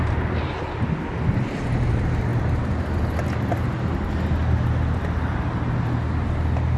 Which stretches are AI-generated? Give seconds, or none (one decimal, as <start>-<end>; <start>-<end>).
none